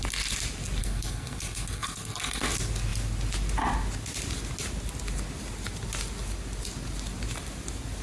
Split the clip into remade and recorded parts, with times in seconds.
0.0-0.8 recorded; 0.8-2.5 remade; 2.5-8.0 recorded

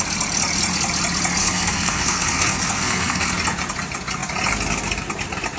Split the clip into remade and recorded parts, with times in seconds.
0.0-1.4 recorded; 1.4-3.3 remade; 3.3-5.6 recorded

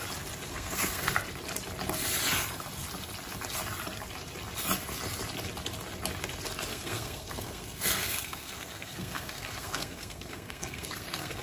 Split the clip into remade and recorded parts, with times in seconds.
0.0-0.5 recorded; 0.5-1.1 remade; 1.1-6.7 recorded; 6.7-11.4 remade